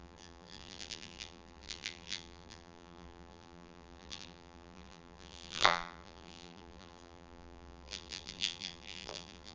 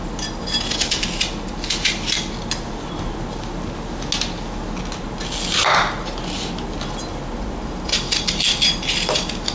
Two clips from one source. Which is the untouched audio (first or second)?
second